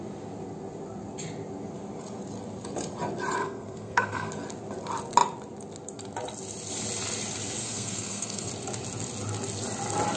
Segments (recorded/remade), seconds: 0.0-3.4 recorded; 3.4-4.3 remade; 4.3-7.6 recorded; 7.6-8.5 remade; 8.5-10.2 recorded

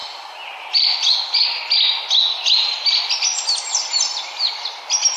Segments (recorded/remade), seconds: 0.0-5.2 recorded

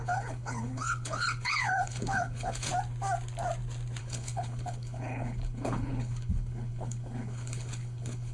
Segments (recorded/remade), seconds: 0.0-2.7 remade; 2.7-4.0 recorded; 4.0-8.3 remade

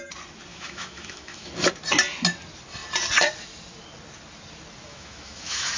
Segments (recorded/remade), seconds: 0.0-0.5 recorded; 0.5-1.5 remade; 1.5-4.9 recorded; 4.9-5.8 remade

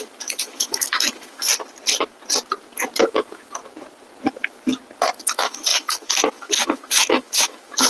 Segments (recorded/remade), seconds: 0.0-1.5 remade; 1.5-3.0 recorded; 3.0-3.6 remade; 3.6-5.2 recorded; 5.2-7.9 remade

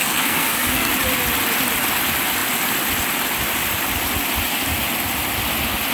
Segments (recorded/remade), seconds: 0.0-0.9 remade; 0.9-5.9 recorded

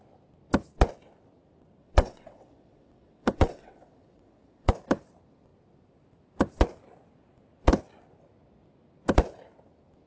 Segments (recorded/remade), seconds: 0.0-1.8 recorded; 1.8-4.7 remade; 4.7-10.1 recorded

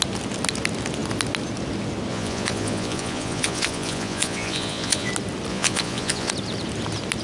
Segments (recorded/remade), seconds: 0.0-2.1 recorded; 2.1-5.1 remade; 5.1-5.5 recorded; 5.5-6.3 remade; 6.3-7.2 recorded